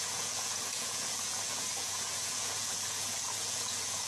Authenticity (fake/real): fake